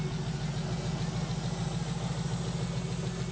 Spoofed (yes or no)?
no